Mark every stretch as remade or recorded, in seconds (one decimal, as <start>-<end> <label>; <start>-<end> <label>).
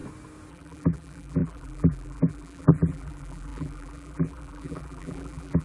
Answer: 0.0-0.5 recorded; 0.5-5.6 remade